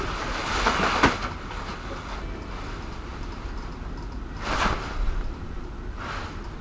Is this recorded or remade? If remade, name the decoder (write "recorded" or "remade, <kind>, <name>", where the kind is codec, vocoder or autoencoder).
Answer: recorded